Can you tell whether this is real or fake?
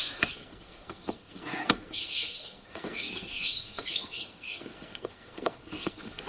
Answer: fake